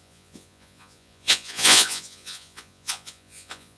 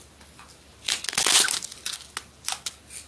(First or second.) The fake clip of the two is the first